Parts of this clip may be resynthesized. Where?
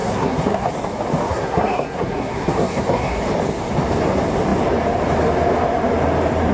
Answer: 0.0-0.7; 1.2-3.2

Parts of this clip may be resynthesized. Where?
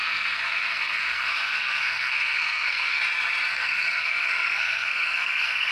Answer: 0.0-3.0; 3.5-5.7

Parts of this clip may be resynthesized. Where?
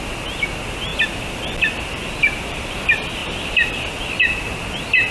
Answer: 0.9-2.8; 3.2-3.8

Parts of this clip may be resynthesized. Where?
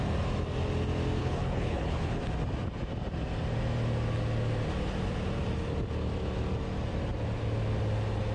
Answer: 1.2-2.2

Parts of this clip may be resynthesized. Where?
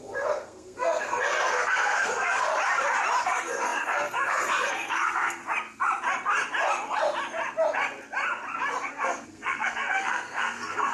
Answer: 0.0-2.5; 3.2-5.4; 8.9-10.9